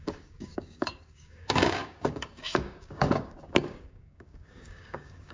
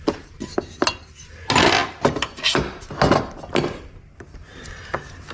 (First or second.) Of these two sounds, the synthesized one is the first